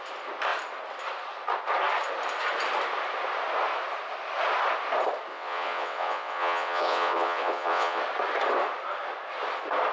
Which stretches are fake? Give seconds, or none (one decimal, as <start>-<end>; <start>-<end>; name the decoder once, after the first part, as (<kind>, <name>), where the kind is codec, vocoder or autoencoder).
5.3-8.0 (vocoder, WaveNeXt)